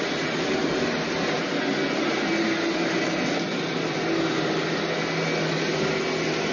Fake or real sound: real